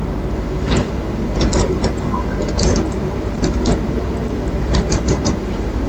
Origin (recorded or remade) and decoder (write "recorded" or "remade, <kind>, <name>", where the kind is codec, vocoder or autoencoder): recorded